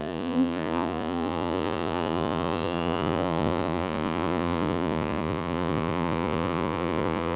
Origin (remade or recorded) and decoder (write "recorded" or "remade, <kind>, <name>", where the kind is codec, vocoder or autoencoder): remade, vocoder, Vocos